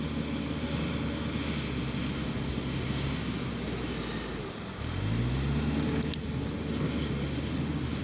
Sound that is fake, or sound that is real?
real